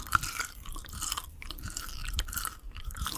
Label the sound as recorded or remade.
remade